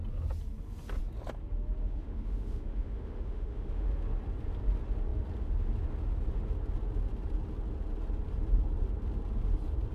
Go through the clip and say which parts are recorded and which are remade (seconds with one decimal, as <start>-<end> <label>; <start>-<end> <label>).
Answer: 0.0-1.8 recorded; 1.8-3.9 remade; 3.9-9.9 recorded